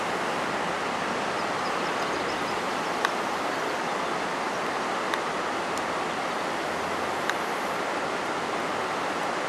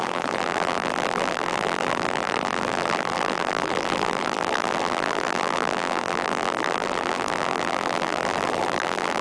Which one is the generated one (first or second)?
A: second